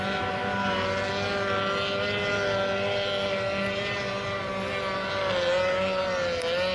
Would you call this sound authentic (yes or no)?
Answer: yes